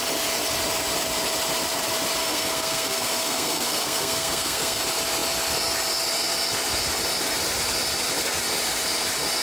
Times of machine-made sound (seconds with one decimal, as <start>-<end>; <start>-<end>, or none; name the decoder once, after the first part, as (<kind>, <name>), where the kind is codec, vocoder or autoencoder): 2.2-4.8 (codec, SNAC)